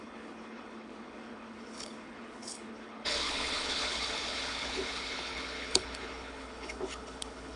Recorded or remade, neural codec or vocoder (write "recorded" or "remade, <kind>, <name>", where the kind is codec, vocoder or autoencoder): remade, codec, HILCodec